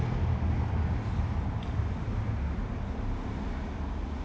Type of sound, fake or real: real